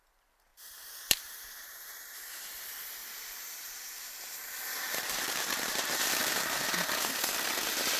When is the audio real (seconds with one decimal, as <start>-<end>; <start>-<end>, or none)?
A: 0.0-0.5; 2.4-3.0; 6.3-8.0